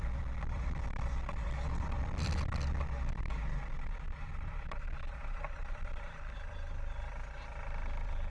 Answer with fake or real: fake